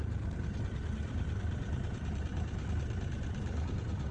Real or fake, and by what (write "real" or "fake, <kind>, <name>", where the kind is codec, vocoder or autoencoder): fake, vocoder, BigVGAN v2